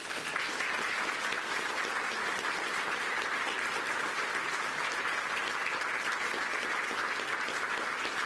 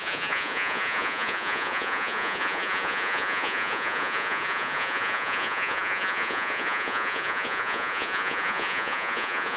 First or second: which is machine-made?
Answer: second